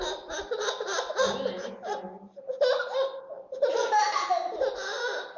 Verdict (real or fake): real